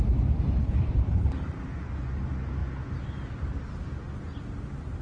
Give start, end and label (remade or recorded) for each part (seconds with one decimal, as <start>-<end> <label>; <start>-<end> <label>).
0.0-0.6 recorded; 0.6-1.3 remade; 1.3-5.0 recorded